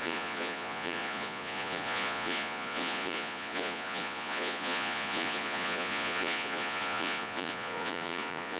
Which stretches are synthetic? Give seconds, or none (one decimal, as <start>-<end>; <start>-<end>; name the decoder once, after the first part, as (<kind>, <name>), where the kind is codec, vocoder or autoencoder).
0.0-8.6 (vocoder, Vocos)